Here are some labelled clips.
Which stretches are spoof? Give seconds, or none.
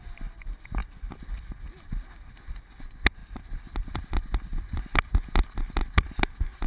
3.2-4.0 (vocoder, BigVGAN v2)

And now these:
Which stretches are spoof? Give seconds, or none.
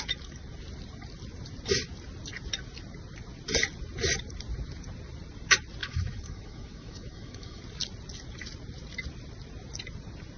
5.8-7.6 (autoencoder, DAC-VAE)